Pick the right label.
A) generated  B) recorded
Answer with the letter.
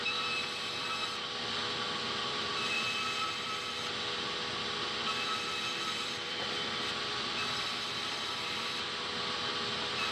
A